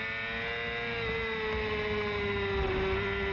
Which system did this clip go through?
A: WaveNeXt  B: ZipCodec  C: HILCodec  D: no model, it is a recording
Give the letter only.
D